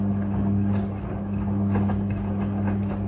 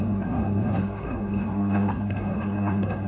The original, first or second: first